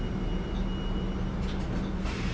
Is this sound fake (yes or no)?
no